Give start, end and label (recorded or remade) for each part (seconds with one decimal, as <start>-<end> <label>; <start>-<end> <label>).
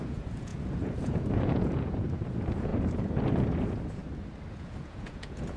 0.0-4.0 remade; 4.0-4.5 recorded; 4.5-5.6 remade